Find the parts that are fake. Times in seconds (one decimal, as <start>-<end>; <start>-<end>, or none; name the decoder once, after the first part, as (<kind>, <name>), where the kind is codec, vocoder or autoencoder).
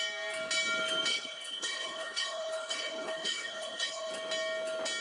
1.1-4.1 (codec, HILCodec)